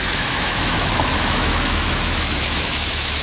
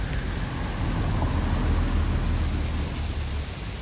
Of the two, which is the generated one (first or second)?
first